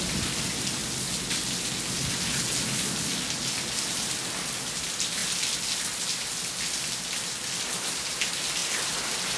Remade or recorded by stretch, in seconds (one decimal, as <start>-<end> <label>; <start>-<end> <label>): 0.0-9.4 recorded